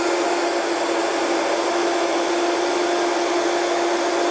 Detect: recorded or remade recorded